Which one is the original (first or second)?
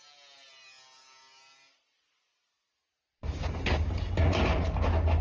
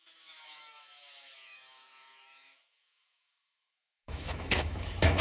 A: first